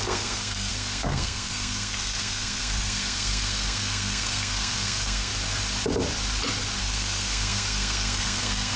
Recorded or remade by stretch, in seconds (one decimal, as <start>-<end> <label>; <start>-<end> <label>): 0.0-5.3 remade; 5.3-6.8 recorded; 6.8-8.8 remade